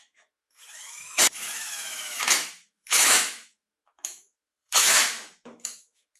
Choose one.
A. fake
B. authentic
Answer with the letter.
A